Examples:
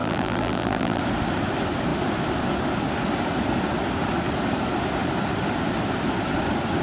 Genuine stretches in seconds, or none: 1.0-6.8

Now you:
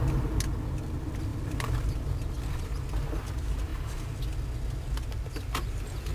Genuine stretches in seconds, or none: 0.0-1.3; 2.7-6.1

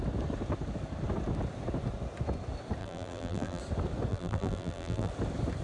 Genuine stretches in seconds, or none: 0.0-2.8; 3.6-4.1; 5.1-5.6

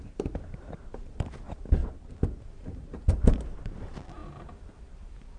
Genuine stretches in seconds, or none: 1.8-2.4; 4.2-4.8

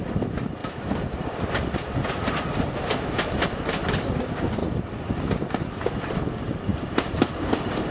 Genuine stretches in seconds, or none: 0.0-6.7; 7.5-7.9